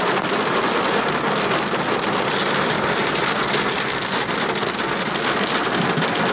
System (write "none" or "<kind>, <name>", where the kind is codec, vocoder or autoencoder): none